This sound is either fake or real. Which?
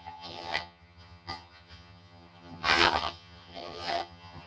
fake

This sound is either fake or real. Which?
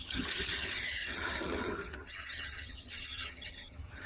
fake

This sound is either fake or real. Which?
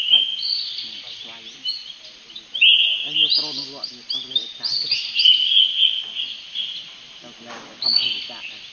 real